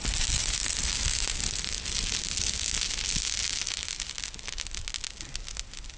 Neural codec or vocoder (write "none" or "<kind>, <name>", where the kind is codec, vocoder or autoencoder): none